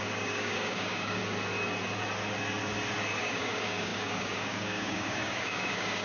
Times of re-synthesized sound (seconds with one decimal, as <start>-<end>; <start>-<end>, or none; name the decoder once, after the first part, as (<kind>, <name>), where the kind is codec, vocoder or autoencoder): 0.0-1.2 (codec, DAC); 3.2-6.0